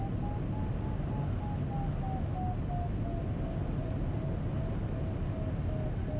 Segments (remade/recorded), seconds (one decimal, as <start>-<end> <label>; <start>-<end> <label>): 0.0-6.2 recorded